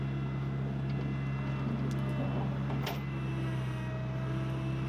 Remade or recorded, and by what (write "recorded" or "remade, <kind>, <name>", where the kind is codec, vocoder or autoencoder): recorded